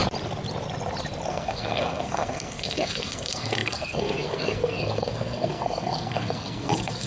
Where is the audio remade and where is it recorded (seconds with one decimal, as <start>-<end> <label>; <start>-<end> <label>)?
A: 0.0-1.3 recorded; 1.3-7.1 remade